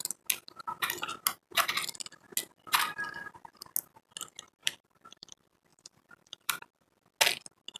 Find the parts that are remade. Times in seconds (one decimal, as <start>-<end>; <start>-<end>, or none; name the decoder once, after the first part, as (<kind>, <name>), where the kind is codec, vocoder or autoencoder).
4.6-5.3 (vocoder, BigVGAN v2); 5.7-6.5

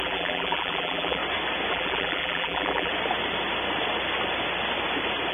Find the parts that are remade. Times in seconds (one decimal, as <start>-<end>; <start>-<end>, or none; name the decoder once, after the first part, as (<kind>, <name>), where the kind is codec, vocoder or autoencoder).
0.0-1.2 (vocoder, BigVGAN v2); 1.7-2.9

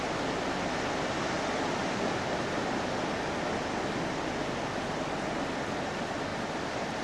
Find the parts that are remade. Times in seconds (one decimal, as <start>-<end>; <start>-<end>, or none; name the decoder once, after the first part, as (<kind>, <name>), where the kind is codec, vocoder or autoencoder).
6.3-7.0 (vocoder, BigVGAN v2)